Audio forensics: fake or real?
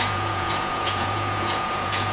fake